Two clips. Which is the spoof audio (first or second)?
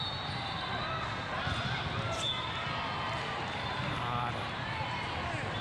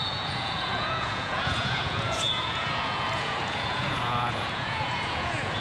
second